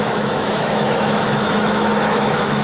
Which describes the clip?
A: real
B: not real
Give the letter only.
B